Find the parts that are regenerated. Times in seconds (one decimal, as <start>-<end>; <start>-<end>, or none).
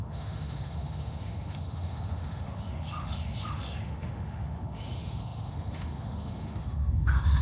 0.0-7.4